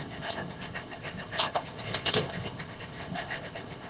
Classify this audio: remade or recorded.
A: remade